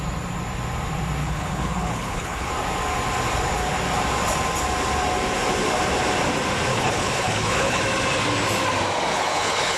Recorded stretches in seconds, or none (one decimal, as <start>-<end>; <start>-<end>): 0.0-1.2; 2.5-6.7; 7.8-9.1